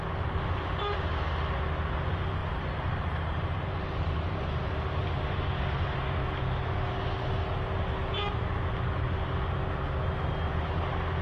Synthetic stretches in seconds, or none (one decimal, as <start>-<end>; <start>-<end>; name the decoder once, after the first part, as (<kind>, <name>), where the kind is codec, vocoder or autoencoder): 2.4-4.4 (vocoder, BigVGAN v2)